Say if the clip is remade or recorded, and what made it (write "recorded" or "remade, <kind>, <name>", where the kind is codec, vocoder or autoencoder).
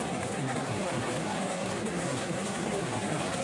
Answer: remade, codec, SNAC